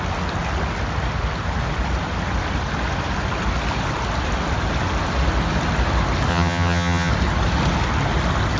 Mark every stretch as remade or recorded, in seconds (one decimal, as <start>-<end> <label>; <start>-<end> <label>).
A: 0.0-6.3 recorded; 6.3-7.1 remade; 7.1-8.6 recorded